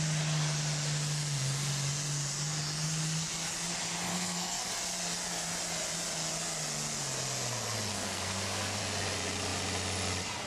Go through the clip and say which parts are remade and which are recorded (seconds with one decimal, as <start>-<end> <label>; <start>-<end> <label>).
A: 0.0-4.1 recorded; 4.1-4.7 remade; 4.7-7.9 recorded; 7.9-8.8 remade; 8.8-10.5 recorded